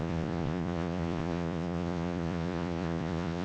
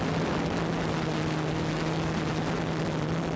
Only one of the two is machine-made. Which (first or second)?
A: first